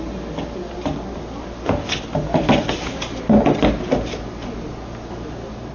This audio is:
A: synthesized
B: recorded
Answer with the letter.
B